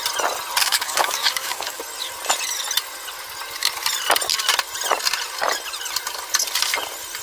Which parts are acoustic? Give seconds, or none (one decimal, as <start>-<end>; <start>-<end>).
0.0-0.6; 1.8-7.2